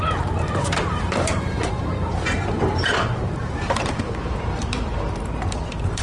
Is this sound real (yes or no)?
no